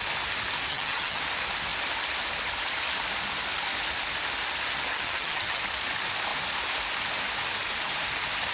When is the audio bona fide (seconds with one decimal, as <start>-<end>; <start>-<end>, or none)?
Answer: 0.0-0.7; 1.2-4.9; 5.6-8.5